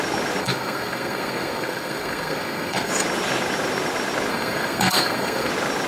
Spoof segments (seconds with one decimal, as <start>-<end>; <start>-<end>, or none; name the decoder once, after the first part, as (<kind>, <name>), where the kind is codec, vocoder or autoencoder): 0.4-2.9 (codec, SNAC); 4.3-5.5